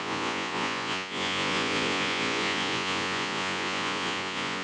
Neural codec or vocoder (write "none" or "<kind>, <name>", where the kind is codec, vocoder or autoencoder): vocoder, Vocos